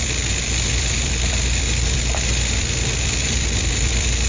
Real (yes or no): no